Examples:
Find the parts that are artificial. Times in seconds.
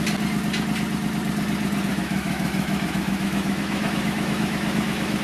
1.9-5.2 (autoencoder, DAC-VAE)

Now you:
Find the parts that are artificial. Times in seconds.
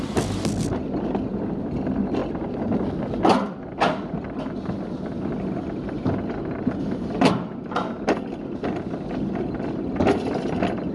none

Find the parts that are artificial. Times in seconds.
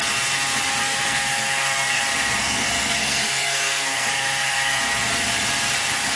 0.8-2.0 (codec, SNAC); 2.4-4.8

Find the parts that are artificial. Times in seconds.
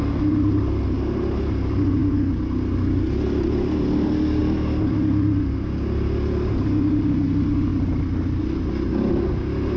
none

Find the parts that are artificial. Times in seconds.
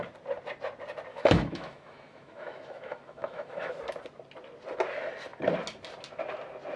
1.1-3.7 (autoencoder, DAC-VAE)